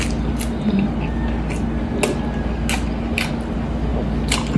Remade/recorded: recorded